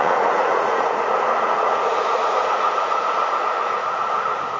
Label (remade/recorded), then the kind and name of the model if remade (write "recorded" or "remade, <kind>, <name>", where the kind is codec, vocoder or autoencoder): remade, vocoder, Vocos